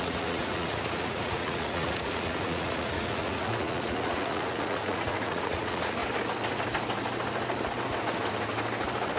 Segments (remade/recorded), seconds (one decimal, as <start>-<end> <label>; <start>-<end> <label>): 0.0-6.0 remade; 6.0-9.2 recorded